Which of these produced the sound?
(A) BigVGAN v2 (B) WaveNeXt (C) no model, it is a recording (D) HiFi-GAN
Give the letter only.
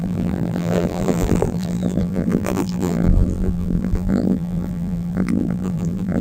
A